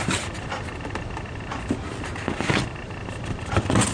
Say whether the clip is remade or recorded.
recorded